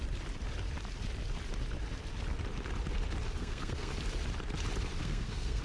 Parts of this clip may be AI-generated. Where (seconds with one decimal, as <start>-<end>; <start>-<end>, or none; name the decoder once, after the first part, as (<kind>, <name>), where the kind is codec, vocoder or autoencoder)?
3.4-3.9 (codec, SNAC); 5.0-5.6